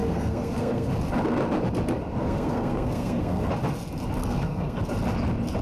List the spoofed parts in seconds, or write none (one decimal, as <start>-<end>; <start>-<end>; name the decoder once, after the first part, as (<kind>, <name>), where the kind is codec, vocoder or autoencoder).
0.0-0.9 (codec, SNAC); 2.2-3.5; 4.2-4.8